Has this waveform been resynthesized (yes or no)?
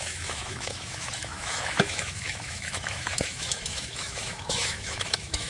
yes